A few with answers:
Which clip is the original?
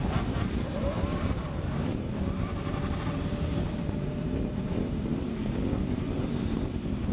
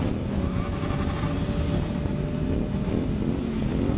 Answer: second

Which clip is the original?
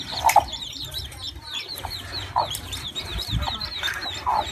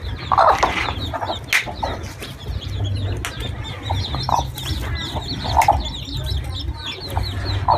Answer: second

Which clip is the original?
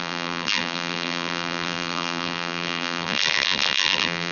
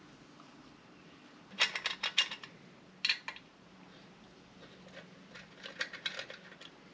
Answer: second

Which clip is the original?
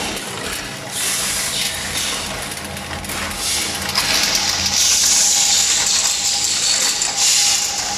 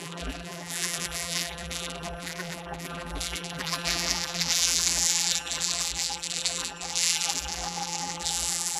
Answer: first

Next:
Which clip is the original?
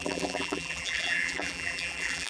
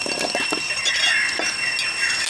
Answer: second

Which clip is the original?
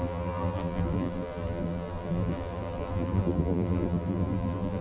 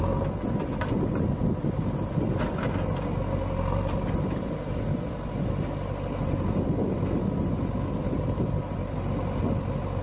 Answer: second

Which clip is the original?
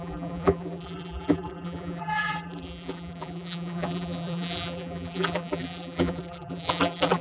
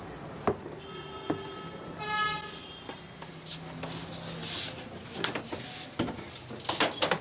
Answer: second